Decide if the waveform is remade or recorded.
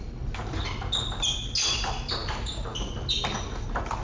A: recorded